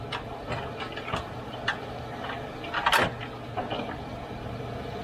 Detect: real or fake real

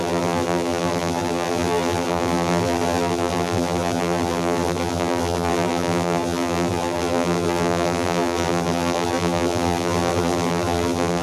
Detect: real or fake fake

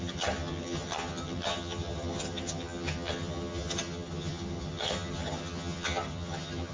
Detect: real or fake fake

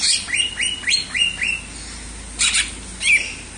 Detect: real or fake real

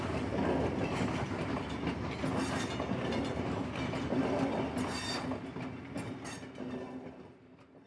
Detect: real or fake real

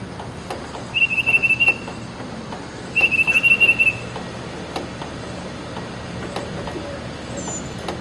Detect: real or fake real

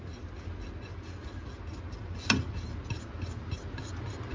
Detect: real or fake real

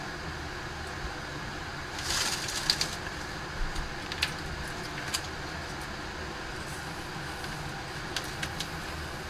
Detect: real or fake real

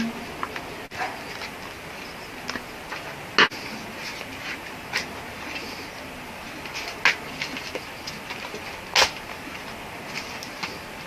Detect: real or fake real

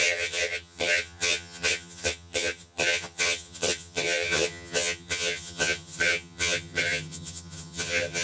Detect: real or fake fake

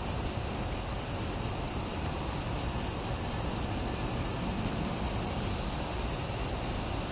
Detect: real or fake real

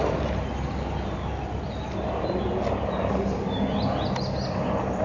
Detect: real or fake real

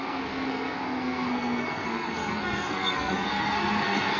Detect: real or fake fake